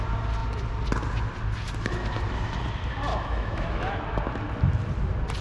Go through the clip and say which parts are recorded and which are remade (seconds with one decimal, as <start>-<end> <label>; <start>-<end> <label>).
0.0-3.1 recorded; 3.1-3.9 remade; 3.9-5.4 recorded

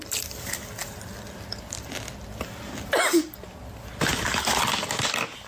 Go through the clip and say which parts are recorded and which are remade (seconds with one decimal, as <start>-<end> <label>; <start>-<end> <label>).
0.0-5.5 remade

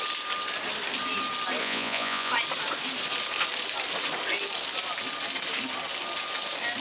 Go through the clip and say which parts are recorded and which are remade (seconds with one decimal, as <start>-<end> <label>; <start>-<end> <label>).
0.0-1.6 recorded; 1.6-2.3 remade; 2.3-6.8 recorded